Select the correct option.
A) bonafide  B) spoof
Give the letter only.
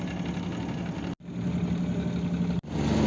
A